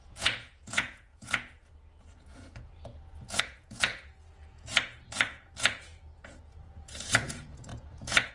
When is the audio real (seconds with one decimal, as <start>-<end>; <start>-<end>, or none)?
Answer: none